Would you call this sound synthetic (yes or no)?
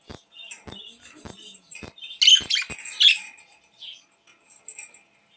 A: no